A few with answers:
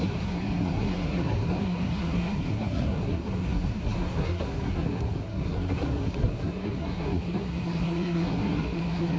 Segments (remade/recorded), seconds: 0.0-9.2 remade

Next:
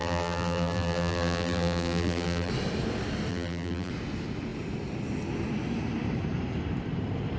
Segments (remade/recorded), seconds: 0.0-2.5 remade; 2.5-3.3 recorded; 3.3-3.9 remade; 3.9-7.4 recorded

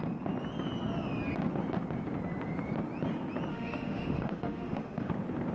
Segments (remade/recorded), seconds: 0.0-3.5 recorded; 3.5-5.1 remade; 5.1-5.5 recorded

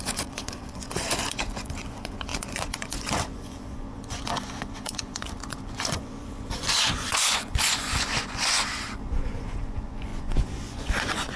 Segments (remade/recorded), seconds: 0.0-11.4 remade

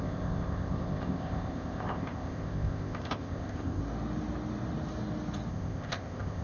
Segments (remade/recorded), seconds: 0.0-3.8 remade; 3.8-5.5 recorded; 5.5-6.4 remade

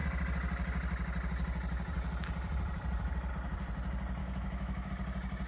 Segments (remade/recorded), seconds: 0.0-4.2 recorded; 4.2-4.9 remade; 4.9-5.5 recorded

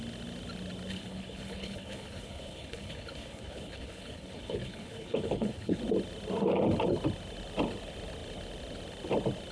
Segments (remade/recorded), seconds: 0.0-0.9 recorded; 0.9-5.8 remade; 5.8-9.5 recorded

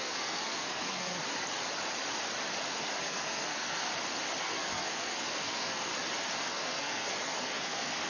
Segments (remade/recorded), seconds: 0.0-1.1 remade; 1.1-3.0 recorded; 3.0-3.9 remade; 3.9-4.4 recorded; 4.4-5.9 remade; 5.9-6.4 recorded; 6.4-8.1 remade